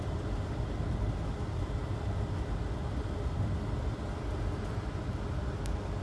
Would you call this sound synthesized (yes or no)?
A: no